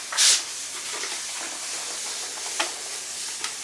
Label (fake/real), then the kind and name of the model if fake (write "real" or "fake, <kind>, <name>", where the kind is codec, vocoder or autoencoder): real